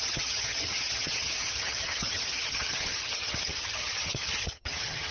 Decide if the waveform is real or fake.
fake